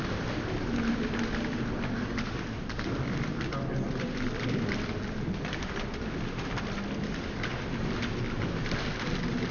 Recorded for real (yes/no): yes